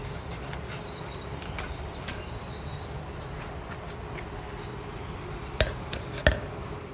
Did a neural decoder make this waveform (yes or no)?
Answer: no